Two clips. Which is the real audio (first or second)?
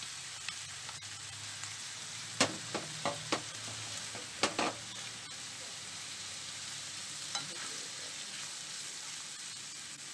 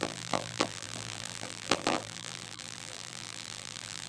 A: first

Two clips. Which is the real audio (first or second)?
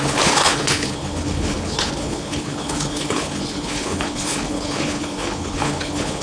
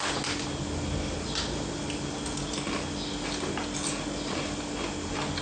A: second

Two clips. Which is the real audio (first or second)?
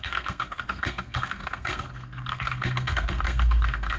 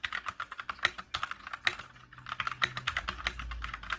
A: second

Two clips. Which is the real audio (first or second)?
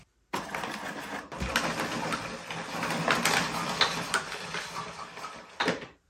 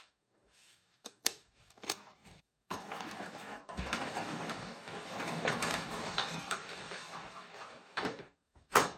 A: first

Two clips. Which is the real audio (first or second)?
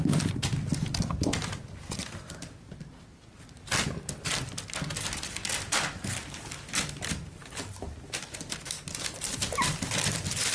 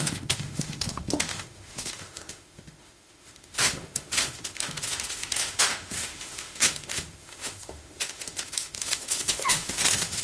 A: first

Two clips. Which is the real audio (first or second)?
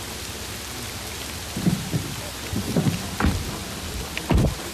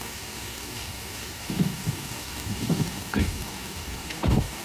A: first